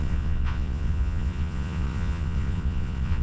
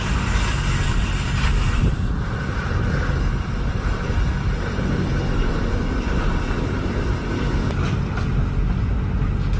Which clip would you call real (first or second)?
second